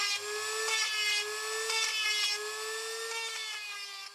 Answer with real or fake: real